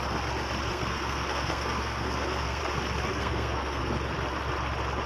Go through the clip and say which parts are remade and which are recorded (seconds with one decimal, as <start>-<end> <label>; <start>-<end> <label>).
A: 0.0-0.7 recorded; 0.7-2.6 remade; 2.6-3.1 recorded; 3.1-3.8 remade; 3.8-5.1 recorded